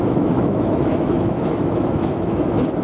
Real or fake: fake